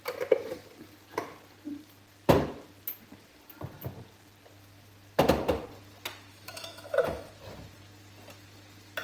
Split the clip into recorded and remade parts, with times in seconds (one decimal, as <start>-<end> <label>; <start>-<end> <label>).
0.0-6.3 recorded; 6.3-7.3 remade; 7.3-9.0 recorded